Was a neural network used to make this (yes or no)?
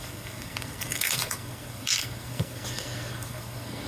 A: yes